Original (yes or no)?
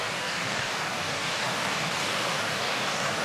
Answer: no